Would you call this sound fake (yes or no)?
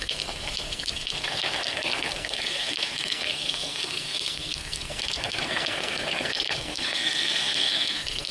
yes